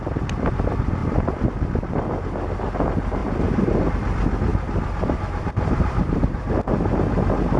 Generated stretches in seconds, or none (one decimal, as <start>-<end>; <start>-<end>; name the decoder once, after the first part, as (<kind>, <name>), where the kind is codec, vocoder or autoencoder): 1.0-1.5 (vocoder, BigVGAN v2); 3.2-3.9; 4.5-6.6